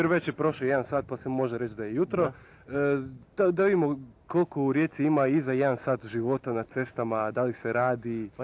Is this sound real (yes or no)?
yes